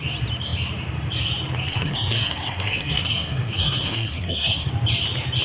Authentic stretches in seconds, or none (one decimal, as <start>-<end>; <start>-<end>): 0.0-1.7; 4.7-5.4